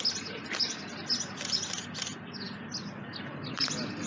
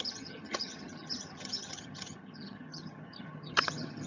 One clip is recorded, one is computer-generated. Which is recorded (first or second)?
first